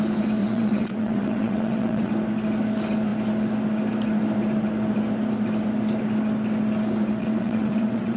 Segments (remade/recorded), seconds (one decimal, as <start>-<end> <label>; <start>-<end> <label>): 0.0-0.4 recorded; 0.4-2.1 remade; 2.1-7.2 recorded; 7.2-8.2 remade